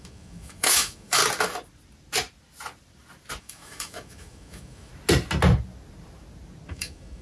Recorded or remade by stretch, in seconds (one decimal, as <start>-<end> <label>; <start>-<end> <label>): 0.0-1.2 remade; 1.2-3.4 recorded; 3.4-4.9 remade; 4.9-6.7 recorded; 6.7-7.2 remade